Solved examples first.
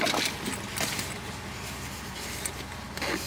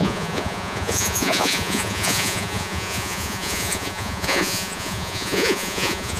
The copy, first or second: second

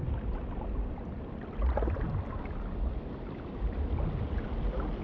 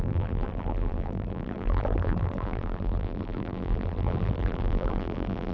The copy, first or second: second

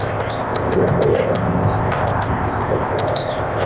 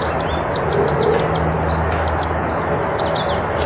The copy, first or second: first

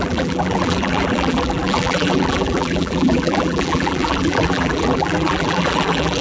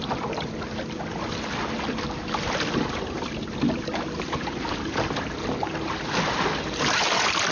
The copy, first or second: first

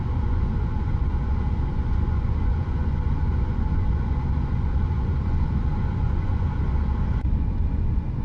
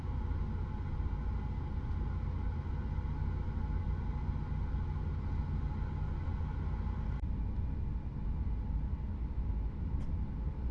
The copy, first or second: first